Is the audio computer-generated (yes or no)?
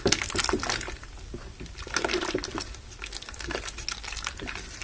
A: no